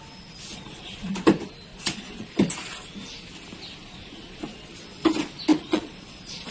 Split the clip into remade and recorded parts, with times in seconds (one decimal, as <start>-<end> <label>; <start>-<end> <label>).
0.0-0.5 recorded; 0.5-1.1 remade; 1.1-1.7 recorded; 1.7-2.3 remade; 2.3-3.8 recorded; 3.8-4.7 remade; 4.7-5.5 recorded; 5.5-6.5 remade